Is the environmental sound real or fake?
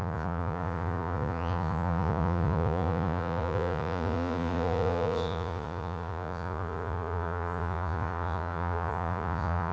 fake